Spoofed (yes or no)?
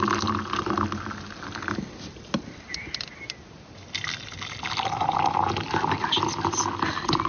no